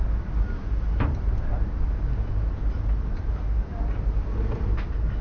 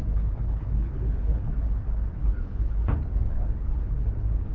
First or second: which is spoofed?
second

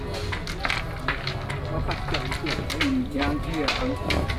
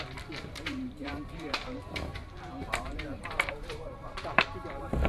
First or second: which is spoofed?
second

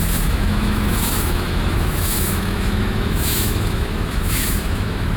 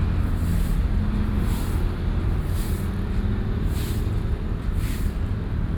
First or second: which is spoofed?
first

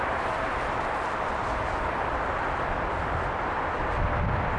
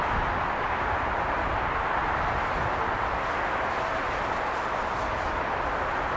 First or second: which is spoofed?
first